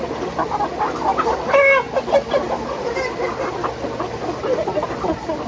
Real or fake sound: real